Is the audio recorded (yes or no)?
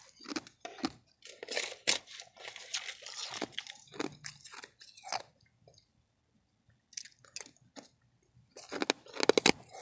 yes